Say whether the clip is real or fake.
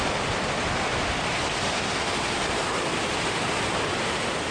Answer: real